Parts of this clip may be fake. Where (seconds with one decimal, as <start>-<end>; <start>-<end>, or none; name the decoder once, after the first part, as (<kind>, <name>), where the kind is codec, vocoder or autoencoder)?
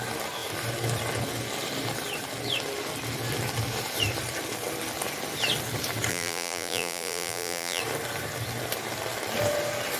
6.1-7.8 (vocoder, BigVGAN v2)